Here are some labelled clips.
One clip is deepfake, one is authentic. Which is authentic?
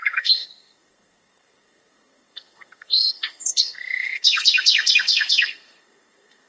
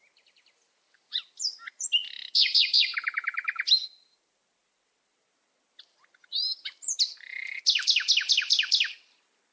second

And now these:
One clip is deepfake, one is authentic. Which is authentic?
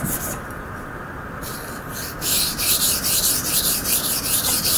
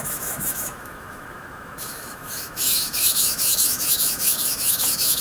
first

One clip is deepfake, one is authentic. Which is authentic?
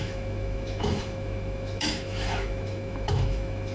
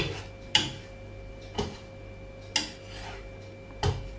second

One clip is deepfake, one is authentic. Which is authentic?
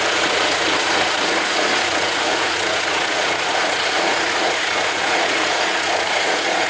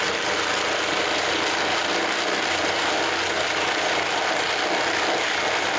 second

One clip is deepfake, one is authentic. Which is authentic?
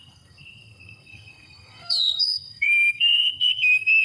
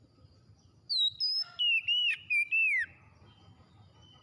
second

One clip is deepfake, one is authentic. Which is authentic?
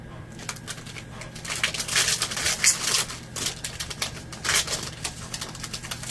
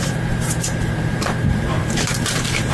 first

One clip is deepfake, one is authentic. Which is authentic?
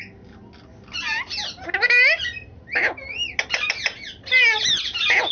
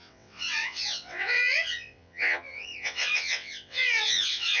first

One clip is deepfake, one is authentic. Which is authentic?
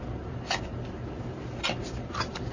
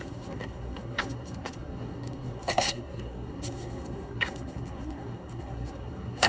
first